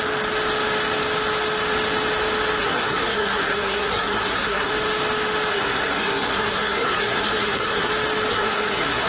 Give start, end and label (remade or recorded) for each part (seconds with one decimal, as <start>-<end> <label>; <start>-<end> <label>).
0.0-2.6 recorded; 2.6-4.7 remade; 4.7-5.5 recorded; 5.5-7.9 remade; 7.9-8.3 recorded; 8.3-9.1 remade